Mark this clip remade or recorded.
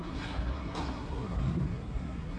remade